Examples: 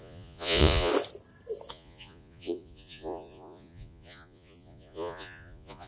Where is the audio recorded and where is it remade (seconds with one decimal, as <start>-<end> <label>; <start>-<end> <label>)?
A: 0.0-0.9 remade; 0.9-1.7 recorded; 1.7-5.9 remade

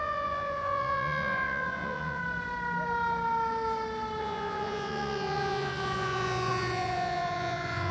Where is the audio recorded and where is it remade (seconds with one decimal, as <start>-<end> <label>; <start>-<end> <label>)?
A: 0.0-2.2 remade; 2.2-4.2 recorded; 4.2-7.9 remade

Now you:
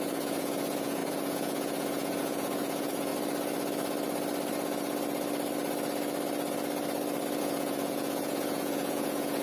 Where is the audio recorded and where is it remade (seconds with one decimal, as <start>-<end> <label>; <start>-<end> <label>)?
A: 0.0-3.1 remade; 3.1-7.4 recorded; 7.4-9.4 remade

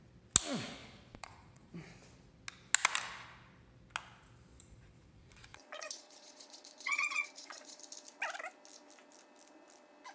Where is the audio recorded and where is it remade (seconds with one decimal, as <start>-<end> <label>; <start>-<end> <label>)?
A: 0.0-0.8 recorded; 0.8-1.7 remade; 1.7-4.5 recorded; 4.5-7.8 remade; 7.8-10.1 recorded

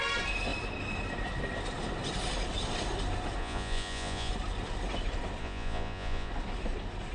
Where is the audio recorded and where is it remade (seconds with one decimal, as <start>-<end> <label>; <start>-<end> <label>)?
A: 0.0-3.4 recorded; 3.4-4.3 remade; 4.3-5.4 recorded; 5.4-6.3 remade; 6.3-7.1 recorded

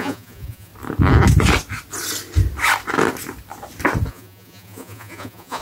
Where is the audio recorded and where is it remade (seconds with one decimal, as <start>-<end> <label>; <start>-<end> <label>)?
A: 0.0-0.7 remade; 0.7-4.1 recorded; 4.1-5.6 remade

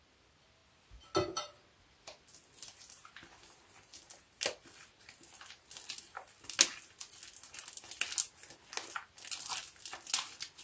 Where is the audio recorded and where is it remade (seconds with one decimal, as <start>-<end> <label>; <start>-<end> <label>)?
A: 0.0-10.6 recorded